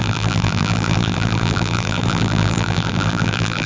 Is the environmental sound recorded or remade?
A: remade